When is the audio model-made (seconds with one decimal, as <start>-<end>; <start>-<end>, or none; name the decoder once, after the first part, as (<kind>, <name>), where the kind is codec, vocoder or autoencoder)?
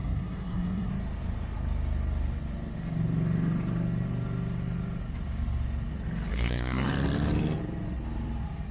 0.0-0.9 (codec, SNAC); 6.3-6.9